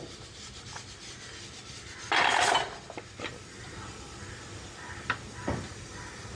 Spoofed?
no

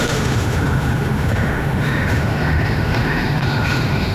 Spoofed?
yes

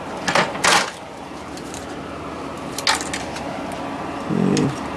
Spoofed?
no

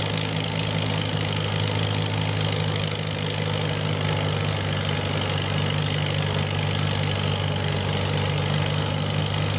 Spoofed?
no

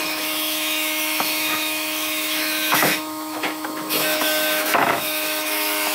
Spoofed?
yes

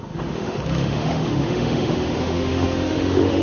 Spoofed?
yes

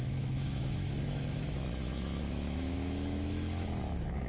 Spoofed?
yes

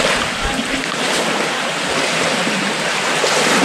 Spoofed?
no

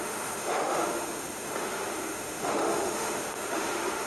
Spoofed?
yes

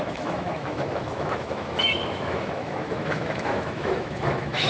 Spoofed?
yes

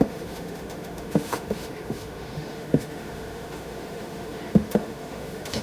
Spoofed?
yes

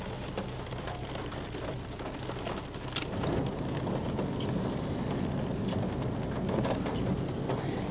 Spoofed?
no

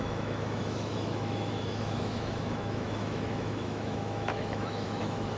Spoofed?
yes